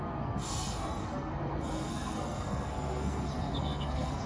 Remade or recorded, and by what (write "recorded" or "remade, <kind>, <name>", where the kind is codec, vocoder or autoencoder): remade, codec, SNAC